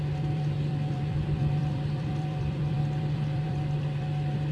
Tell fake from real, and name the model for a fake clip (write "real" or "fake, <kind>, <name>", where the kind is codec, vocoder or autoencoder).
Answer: fake, vocoder, BigVGAN v2